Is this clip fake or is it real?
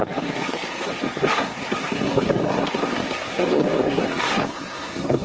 fake